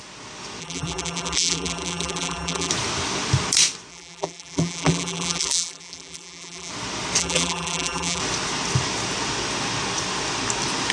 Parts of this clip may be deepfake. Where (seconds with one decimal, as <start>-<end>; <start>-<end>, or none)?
0.6-2.7; 3.9-6.7; 7.2-8.2